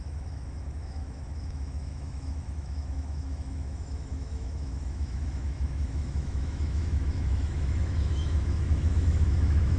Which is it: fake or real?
fake